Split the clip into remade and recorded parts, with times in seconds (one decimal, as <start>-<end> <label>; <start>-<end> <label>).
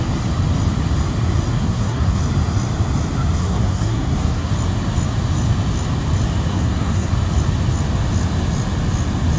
0.0-1.6 recorded; 1.6-2.2 remade; 2.2-3.4 recorded; 3.4-4.5 remade; 4.5-6.5 recorded; 6.5-7.1 remade; 7.1-9.4 recorded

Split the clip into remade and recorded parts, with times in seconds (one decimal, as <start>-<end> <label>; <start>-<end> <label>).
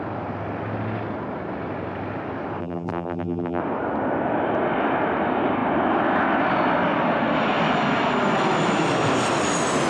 0.0-2.6 recorded; 2.6-3.6 remade; 3.6-9.9 recorded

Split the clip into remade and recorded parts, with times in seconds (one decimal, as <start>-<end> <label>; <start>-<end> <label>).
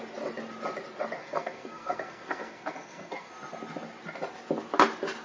0.0-1.2 recorded; 1.2-3.3 remade; 3.3-5.2 recorded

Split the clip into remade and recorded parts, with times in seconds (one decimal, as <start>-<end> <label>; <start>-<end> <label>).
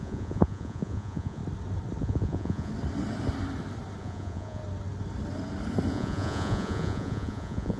0.0-1.4 remade; 1.4-2.0 recorded; 2.0-2.7 remade; 2.7-4.0 recorded; 4.0-4.6 remade; 4.6-5.9 recorded; 5.9-7.8 remade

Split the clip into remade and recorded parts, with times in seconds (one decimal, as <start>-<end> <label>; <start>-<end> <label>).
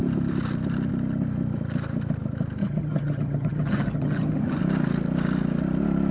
0.0-2.6 recorded; 2.6-4.6 remade; 4.6-6.1 recorded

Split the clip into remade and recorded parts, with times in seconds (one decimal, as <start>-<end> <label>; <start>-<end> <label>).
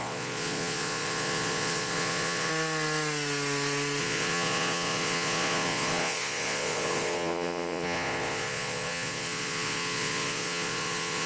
0.0-2.5 remade; 2.5-4.0 recorded; 4.0-11.3 remade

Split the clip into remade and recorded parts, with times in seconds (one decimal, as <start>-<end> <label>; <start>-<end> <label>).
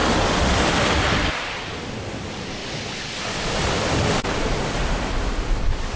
0.0-6.0 recorded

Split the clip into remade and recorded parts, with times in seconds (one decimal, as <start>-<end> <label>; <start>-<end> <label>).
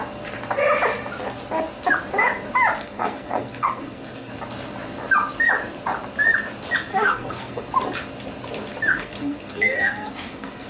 0.0-2.8 recorded; 2.8-4.3 remade; 4.3-6.9 recorded; 6.9-7.6 remade; 7.6-8.9 recorded; 8.9-10.7 remade